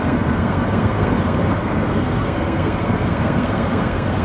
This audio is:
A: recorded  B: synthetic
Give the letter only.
B